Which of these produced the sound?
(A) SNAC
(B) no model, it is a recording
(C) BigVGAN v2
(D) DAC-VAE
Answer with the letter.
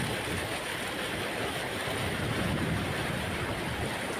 B